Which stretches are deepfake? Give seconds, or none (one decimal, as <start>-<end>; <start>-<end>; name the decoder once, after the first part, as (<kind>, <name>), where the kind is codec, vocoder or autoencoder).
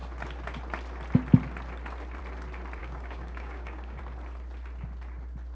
2.8-4.0 (codec, DAC)